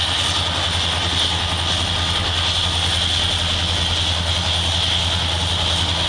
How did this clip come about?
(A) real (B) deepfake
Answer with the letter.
A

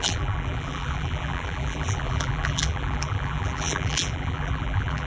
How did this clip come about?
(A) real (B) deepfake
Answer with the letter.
B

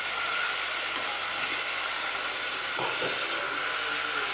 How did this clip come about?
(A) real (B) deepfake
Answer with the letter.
A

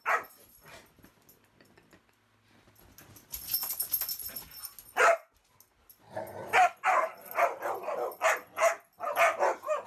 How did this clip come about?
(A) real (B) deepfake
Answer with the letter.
A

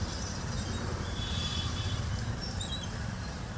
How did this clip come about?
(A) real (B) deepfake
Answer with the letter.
B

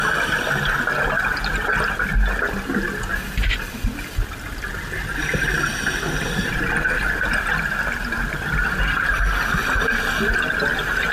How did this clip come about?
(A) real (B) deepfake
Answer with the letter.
A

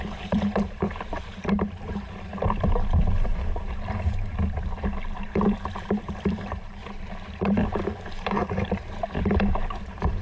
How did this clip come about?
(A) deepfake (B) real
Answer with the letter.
A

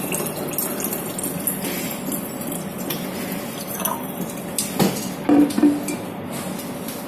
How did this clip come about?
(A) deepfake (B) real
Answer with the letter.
B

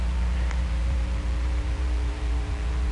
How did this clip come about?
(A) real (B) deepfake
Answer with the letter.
B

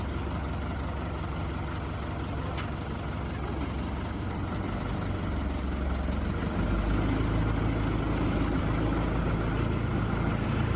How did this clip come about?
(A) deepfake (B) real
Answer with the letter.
B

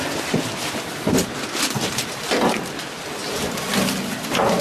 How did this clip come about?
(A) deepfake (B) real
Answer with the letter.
B